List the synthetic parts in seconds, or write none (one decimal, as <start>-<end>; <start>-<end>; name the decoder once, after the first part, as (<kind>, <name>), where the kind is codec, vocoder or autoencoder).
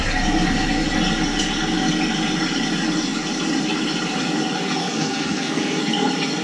4.8-5.8 (codec, SNAC)